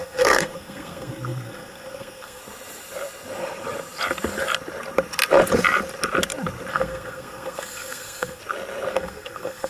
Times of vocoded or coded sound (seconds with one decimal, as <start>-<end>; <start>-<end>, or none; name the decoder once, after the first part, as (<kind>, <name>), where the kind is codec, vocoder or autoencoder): 0.0-2.4 (codec, SNAC); 6.7-8.4; 8.9-9.7